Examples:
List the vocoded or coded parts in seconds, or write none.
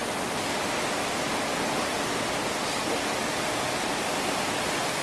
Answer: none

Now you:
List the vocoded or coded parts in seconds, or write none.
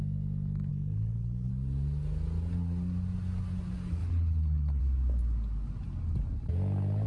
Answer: 0.7-1.5 (codec, HILCodec); 4.0-4.8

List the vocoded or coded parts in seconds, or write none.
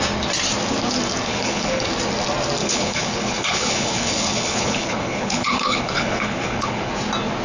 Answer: 1.3-1.9 (codec, HILCodec); 2.6-6.9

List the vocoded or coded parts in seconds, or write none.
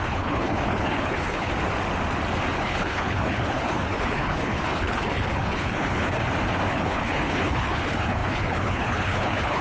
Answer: 0.0-1.5 (codec, HILCodec); 2.6-6.2; 6.7-9.6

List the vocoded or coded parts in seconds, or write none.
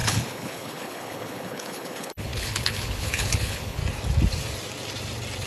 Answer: 0.0-3.8 (codec, HILCodec)